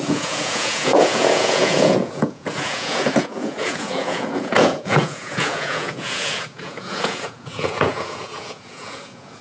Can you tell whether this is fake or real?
fake